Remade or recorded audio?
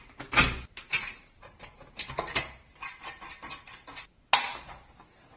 recorded